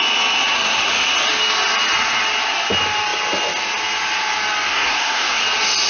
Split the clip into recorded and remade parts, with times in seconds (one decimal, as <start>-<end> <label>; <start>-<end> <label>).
0.0-0.4 recorded; 0.4-0.9 remade; 0.9-4.7 recorded; 4.7-5.4 remade; 5.4-5.9 recorded